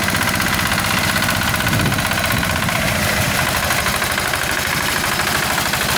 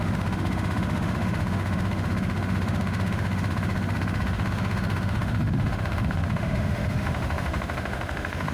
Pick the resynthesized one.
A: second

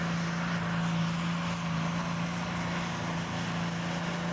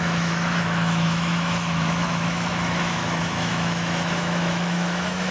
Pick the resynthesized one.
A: second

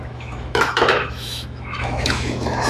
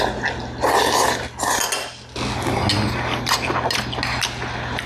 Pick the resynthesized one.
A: first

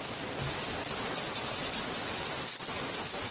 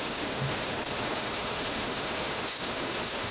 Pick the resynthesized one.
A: second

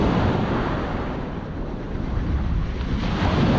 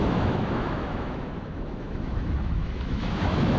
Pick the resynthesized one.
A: second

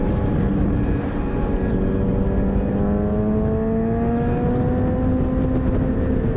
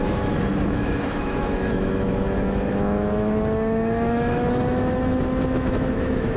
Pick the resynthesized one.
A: second